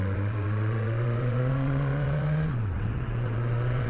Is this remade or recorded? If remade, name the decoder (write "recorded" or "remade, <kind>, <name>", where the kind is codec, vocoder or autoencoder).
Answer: remade, vocoder, WaveNeXt